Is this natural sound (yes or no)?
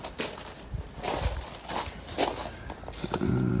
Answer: yes